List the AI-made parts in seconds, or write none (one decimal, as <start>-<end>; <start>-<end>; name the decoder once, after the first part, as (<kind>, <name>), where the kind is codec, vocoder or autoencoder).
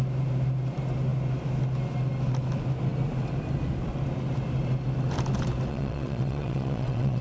5.7-7.2 (vocoder, WaveNeXt)